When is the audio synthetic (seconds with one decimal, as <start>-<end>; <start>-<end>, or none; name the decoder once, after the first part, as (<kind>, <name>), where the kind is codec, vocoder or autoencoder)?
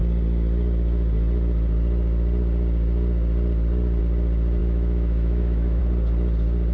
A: 4.6-5.8 (autoencoder, DAC-VAE)